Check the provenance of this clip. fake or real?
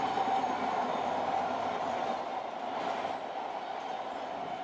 real